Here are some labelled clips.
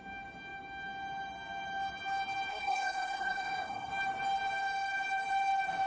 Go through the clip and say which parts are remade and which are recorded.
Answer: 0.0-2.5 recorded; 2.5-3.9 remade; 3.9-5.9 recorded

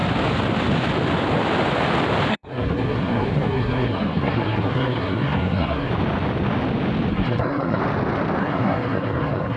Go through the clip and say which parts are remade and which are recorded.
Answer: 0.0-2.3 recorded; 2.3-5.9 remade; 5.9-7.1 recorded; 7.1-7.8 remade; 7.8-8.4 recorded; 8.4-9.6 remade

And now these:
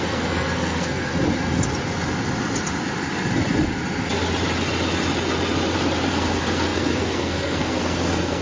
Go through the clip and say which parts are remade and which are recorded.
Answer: 0.0-1.1 remade; 1.1-6.1 recorded; 6.1-8.4 remade

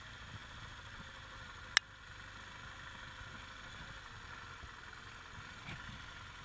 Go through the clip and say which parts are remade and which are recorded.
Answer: 0.0-6.4 recorded

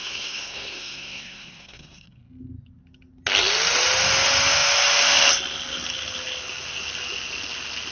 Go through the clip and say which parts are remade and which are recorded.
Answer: 0.0-2.2 remade; 2.2-7.9 recorded